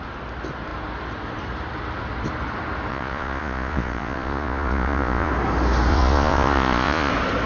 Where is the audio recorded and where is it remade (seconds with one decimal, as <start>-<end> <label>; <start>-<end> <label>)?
0.0-2.9 recorded; 2.9-5.3 remade; 5.3-5.9 recorded; 5.9-7.1 remade; 7.1-7.5 recorded